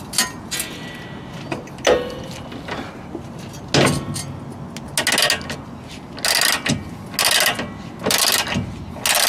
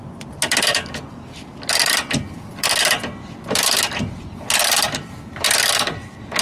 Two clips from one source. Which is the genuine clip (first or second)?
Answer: first